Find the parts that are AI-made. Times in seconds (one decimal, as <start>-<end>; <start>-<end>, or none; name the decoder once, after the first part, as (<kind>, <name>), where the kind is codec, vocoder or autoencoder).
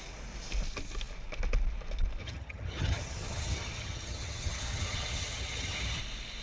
2.2-6.0 (vocoder, HiFi-GAN)